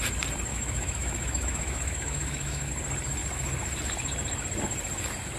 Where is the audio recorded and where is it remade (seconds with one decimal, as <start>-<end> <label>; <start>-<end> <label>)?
0.0-0.5 recorded; 0.5-2.7 remade; 2.7-5.4 recorded